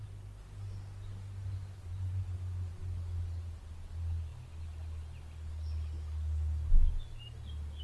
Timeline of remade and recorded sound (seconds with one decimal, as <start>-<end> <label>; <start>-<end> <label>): 0.0-7.8 recorded